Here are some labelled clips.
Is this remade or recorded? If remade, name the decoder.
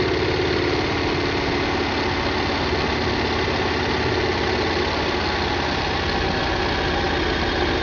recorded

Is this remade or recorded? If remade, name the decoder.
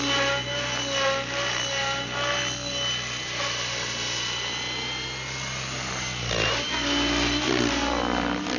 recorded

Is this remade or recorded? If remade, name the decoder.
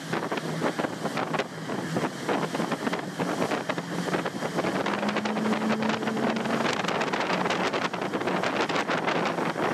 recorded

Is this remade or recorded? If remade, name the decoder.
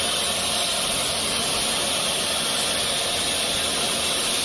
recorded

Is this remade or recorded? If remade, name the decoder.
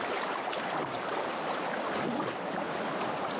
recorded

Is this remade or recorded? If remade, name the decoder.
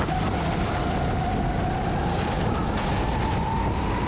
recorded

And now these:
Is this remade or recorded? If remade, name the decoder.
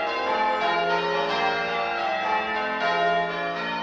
recorded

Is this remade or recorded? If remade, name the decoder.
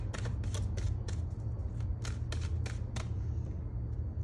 recorded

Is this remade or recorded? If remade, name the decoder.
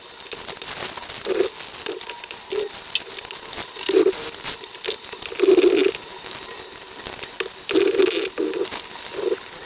recorded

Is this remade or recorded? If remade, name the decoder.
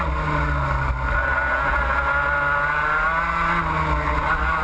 recorded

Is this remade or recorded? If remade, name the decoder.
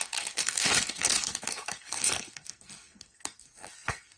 remade, codec, SNAC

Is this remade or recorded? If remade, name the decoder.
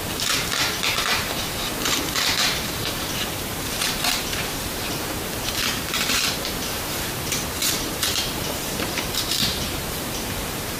remade, vocoder, BigVGAN v2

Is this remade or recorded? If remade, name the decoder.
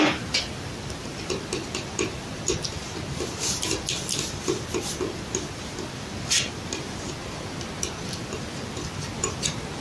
recorded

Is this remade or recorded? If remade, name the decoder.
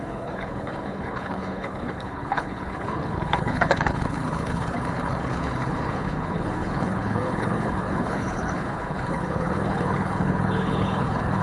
remade, codec, HILCodec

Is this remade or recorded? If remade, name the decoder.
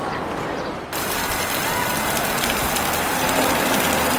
recorded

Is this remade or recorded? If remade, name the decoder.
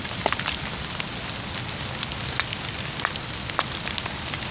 recorded